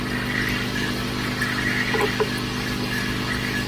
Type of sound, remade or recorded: recorded